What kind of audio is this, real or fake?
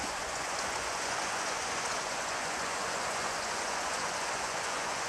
fake